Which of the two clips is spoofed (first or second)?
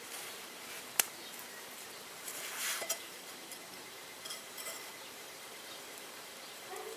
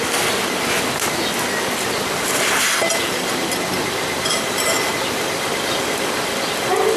first